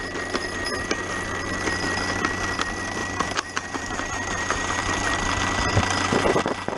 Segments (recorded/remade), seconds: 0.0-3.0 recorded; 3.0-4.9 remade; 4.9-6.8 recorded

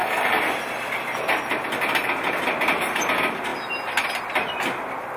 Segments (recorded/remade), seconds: 0.0-1.2 remade; 1.2-5.2 recorded

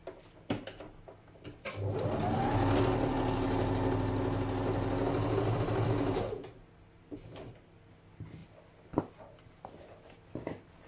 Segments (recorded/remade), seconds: 0.0-10.9 recorded

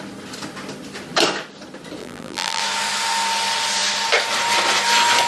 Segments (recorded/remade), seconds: 0.0-2.0 recorded; 2.0-2.6 remade; 2.6-5.3 recorded

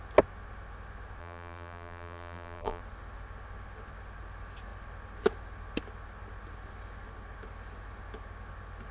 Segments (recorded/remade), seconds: 0.0-1.2 recorded; 1.2-2.8 remade; 2.8-8.9 recorded

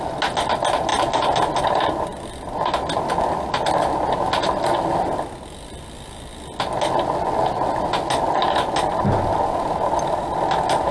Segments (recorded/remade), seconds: 0.0-10.9 recorded

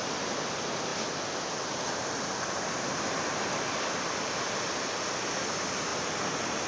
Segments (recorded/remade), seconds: 0.0-6.7 recorded

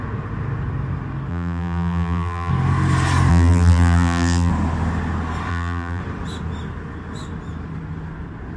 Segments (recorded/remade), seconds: 0.0-1.3 recorded; 1.3-2.5 remade; 2.5-3.3 recorded; 3.3-4.5 remade; 4.5-5.5 recorded; 5.5-6.0 remade; 6.0-8.6 recorded